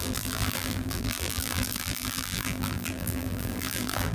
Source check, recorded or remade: remade